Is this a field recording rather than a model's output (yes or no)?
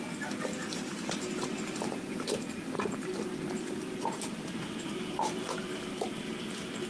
no